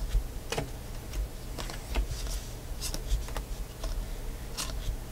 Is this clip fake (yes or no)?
no